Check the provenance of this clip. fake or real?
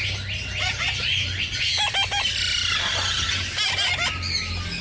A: real